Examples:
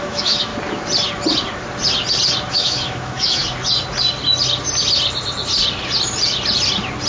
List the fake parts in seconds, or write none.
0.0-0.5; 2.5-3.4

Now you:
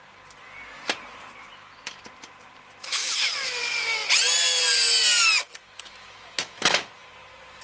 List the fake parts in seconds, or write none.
1.4-2.0; 5.6-6.9

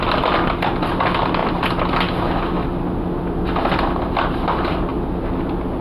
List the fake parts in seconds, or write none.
none

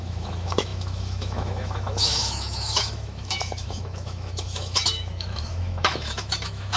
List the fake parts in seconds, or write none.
0.0-6.8

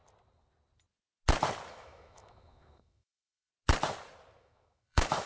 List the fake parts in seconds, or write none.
1.7-3.5; 4.4-5.3

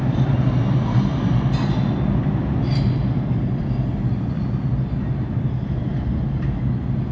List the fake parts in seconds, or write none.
none

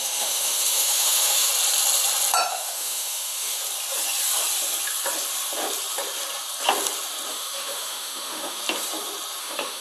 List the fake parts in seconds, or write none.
0.0-1.5; 2.5-3.6; 7.3-8.6; 9.4-9.8